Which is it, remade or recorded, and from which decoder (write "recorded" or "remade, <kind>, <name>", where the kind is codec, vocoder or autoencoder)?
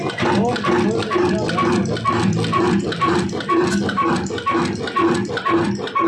recorded